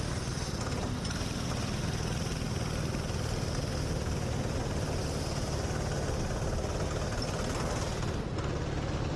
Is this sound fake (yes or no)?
no